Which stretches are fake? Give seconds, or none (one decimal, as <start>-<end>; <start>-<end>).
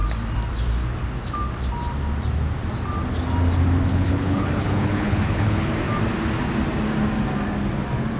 3.9-5.7